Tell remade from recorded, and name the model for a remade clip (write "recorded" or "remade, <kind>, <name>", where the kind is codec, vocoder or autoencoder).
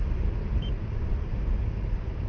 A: recorded